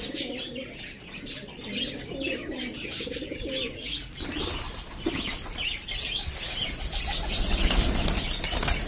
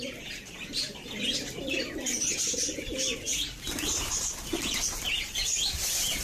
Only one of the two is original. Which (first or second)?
first